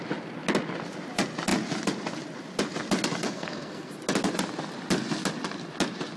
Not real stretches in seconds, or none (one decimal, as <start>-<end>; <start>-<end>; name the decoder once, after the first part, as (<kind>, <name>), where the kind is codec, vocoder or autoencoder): 3.2-3.9 (codec, SNAC)